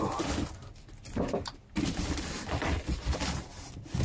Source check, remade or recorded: recorded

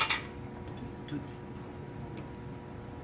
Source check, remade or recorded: recorded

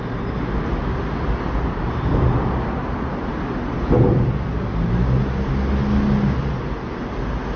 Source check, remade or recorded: recorded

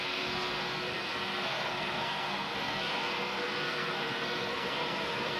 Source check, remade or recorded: remade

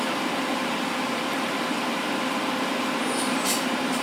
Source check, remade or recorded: remade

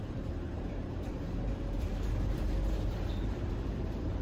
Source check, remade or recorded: remade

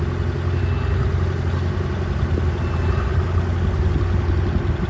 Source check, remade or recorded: recorded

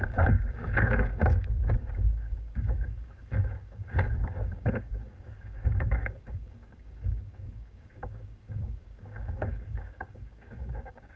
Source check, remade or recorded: remade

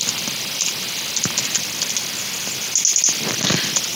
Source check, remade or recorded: recorded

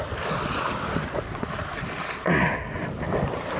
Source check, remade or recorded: recorded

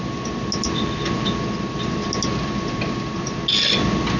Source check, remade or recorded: recorded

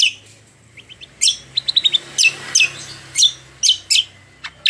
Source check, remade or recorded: recorded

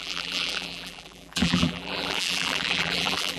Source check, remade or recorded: remade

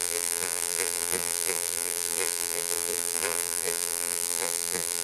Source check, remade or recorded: remade